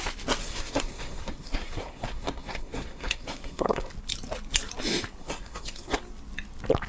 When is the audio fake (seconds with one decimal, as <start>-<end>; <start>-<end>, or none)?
0.4-3.9; 5.2-6.0